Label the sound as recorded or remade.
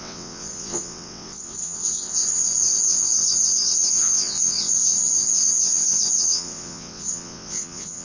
remade